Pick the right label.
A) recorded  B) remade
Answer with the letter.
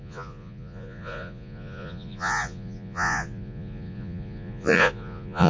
B